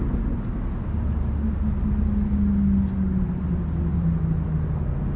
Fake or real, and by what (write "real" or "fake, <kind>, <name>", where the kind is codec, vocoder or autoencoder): real